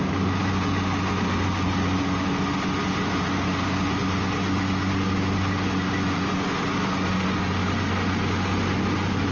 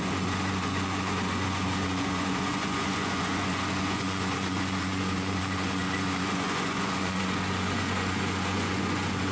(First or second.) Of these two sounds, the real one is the first